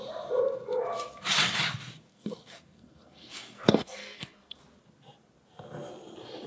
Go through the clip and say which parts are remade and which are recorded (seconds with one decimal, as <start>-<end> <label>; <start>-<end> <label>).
0.0-2.1 recorded; 2.1-4.6 remade; 4.6-6.5 recorded

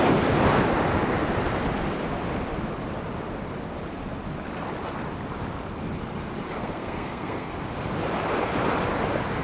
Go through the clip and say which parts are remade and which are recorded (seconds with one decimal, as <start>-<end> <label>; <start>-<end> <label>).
0.0-6.6 recorded; 6.6-7.5 remade; 7.5-9.4 recorded

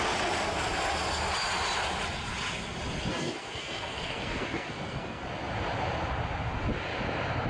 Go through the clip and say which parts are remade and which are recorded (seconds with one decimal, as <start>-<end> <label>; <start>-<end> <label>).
0.0-3.1 recorded; 3.1-5.2 remade; 5.2-7.5 recorded

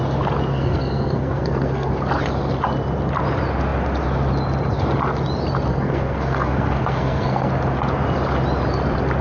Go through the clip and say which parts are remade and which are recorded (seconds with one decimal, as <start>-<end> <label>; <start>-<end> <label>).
0.0-0.5 recorded; 0.5-1.9 remade; 1.9-5.7 recorded; 5.7-7.5 remade; 7.5-9.2 recorded